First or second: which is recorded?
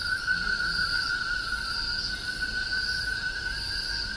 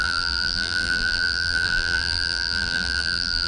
first